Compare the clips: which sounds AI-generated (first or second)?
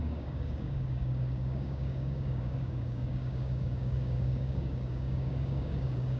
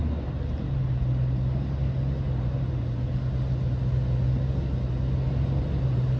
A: first